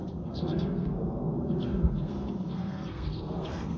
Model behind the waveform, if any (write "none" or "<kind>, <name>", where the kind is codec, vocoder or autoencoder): codec, SNAC